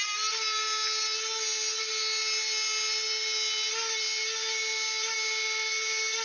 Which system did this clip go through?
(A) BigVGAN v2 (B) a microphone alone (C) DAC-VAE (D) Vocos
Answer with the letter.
B